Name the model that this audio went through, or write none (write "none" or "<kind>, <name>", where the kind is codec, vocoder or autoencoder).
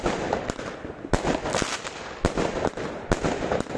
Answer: none